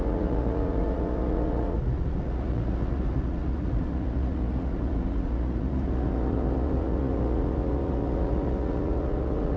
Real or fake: fake